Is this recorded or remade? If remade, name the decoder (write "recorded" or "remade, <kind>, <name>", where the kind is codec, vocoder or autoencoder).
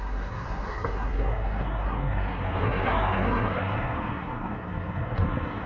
remade, codec, SNAC